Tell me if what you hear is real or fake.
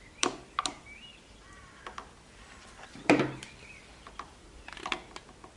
fake